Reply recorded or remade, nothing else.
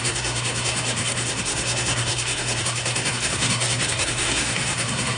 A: remade